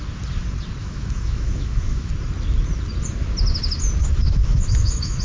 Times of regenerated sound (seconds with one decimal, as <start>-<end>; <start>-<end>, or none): 0.8-2.1; 4.0-5.2